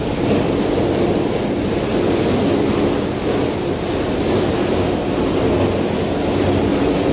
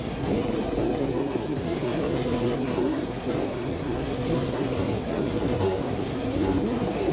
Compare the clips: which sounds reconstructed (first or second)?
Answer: second